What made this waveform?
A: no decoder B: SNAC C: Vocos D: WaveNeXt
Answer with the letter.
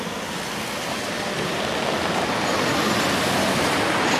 A